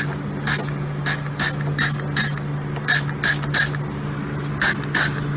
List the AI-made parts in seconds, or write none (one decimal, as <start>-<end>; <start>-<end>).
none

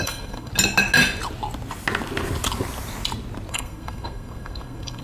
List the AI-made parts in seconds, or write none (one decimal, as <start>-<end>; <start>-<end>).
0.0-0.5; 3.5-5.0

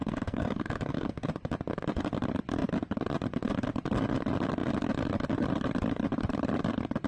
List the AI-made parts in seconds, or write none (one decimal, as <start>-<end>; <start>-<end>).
0.0-1.3